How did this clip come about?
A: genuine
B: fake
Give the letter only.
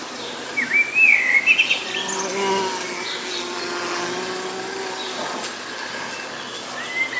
A